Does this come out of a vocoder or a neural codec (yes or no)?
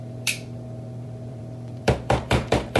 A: yes